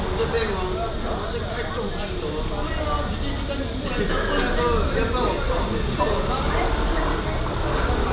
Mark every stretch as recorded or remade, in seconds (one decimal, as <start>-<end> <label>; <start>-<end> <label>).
0.0-8.1 recorded